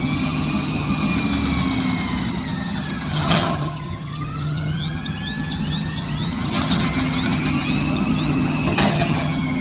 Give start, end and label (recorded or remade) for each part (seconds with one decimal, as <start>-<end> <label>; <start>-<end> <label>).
0.0-1.1 remade; 1.1-2.3 recorded; 2.3-9.6 remade